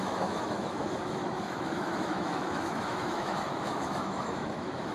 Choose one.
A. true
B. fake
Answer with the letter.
B